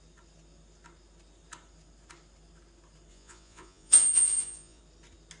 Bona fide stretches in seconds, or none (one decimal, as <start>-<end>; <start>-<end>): 0.0-3.1; 4.8-5.4